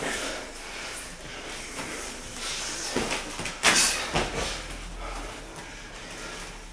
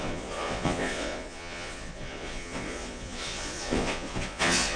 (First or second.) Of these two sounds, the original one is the first